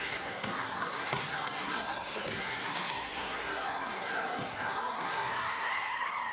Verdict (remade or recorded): remade